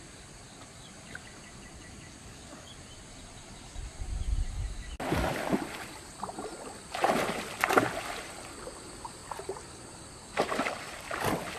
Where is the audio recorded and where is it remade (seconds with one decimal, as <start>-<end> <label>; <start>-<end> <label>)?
0.0-2.2 recorded; 2.2-2.7 remade; 2.7-11.6 recorded